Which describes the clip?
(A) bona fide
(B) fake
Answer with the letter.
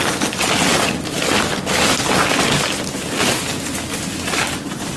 A